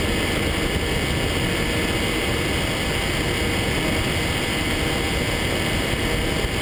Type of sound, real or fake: real